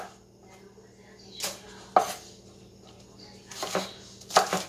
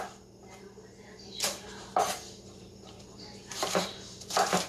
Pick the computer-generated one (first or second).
second